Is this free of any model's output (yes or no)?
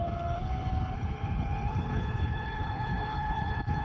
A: no